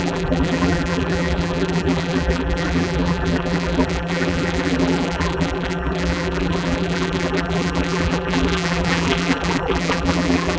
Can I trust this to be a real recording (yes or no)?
no